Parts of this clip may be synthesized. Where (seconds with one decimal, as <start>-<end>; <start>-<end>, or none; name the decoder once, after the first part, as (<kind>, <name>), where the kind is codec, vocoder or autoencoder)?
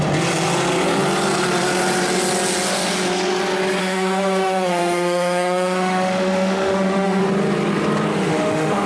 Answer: 3.8-7.2 (autoencoder, DAC-VAE); 8.1-8.9